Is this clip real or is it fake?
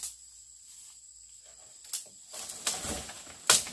real